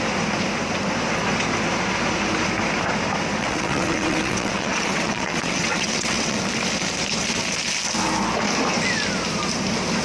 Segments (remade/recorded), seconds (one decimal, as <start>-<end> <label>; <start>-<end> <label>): 0.0-3.4 recorded; 3.4-6.4 remade; 6.4-10.0 recorded